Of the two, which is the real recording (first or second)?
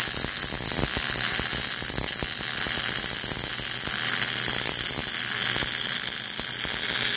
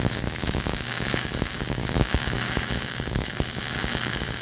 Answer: first